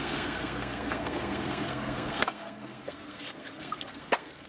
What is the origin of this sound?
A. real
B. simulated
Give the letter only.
B